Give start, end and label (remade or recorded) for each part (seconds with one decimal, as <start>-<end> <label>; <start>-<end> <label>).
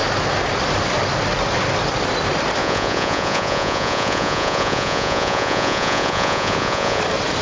0.0-2.6 recorded; 2.6-7.0 remade; 7.0-7.4 recorded